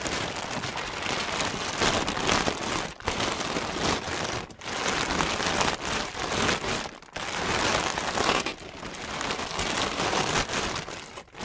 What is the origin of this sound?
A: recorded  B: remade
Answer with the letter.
A